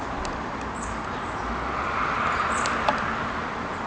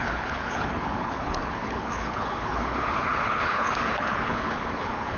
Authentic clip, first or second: first